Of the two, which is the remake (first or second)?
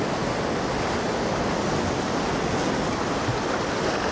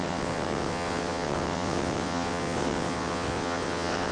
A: second